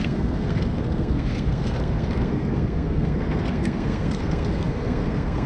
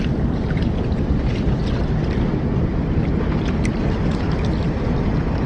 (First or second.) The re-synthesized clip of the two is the first